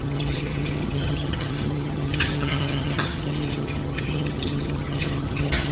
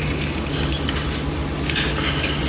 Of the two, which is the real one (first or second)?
second